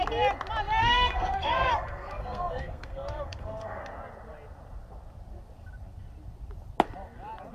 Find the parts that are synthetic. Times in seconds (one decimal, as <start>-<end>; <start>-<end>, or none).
0.8-3.8